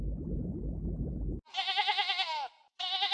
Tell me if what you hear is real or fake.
real